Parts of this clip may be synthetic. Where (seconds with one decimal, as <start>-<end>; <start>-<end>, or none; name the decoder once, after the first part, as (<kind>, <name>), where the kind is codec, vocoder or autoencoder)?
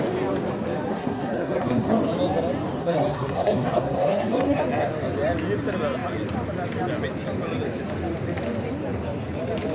0.9-1.9 (codec, SNAC); 2.8-4.6